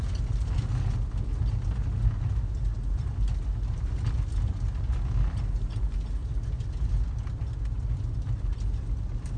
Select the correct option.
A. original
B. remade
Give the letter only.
A